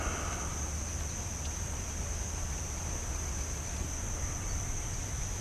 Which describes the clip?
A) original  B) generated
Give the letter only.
A